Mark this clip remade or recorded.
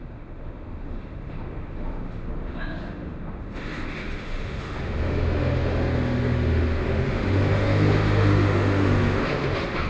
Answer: remade